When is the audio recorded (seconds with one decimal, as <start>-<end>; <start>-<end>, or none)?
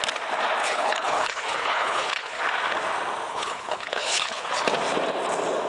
0.0-0.6; 2.4-3.3; 4.5-5.7